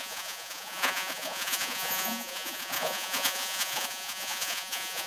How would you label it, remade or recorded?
remade